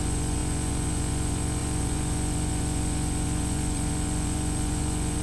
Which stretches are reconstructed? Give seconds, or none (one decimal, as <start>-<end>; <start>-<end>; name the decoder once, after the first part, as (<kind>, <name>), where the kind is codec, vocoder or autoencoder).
0.0-5.2 (vocoder, Vocos)